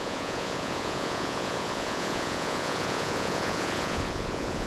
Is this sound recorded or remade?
remade